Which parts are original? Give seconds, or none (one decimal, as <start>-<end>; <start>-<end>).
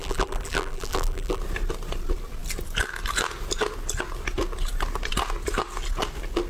1.4-6.5